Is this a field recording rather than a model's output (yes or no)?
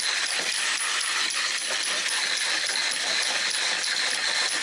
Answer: yes